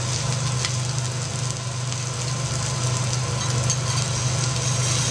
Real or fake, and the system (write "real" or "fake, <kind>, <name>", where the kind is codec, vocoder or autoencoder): real